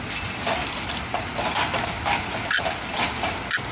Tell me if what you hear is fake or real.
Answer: real